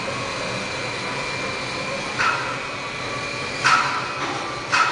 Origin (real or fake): real